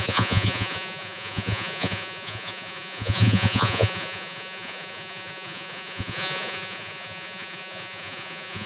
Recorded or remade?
remade